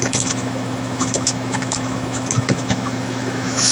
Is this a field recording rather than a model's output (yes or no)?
no